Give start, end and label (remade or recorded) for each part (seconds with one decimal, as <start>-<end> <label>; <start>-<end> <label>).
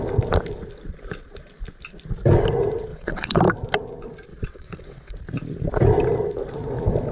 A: 0.0-2.9 recorded; 2.9-3.4 remade; 3.4-4.3 recorded; 4.3-5.1 remade; 5.1-7.1 recorded